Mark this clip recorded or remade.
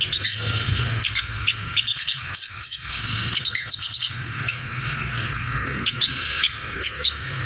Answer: remade